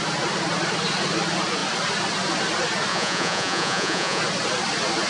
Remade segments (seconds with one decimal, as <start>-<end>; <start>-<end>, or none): 2.9-4.2